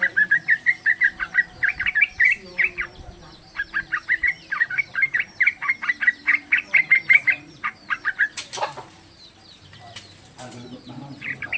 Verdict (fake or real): fake